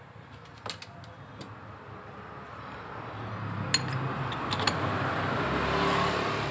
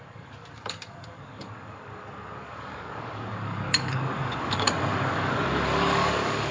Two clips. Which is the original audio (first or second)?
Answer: first